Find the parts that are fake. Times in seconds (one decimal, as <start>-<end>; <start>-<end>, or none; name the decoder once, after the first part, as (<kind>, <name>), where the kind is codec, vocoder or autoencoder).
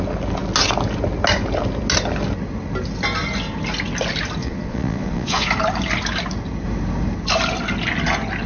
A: 4.4-5.5 (vocoder, Vocos)